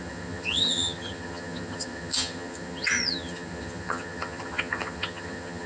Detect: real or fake fake